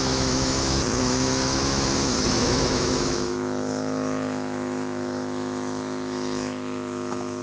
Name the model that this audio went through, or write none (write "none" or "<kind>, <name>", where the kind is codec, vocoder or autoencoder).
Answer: autoencoder, DAC-VAE